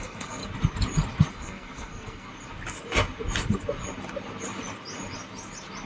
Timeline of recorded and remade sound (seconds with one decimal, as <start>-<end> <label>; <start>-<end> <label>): 0.0-0.4 remade; 0.4-1.3 recorded; 1.3-2.3 remade; 2.3-5.9 recorded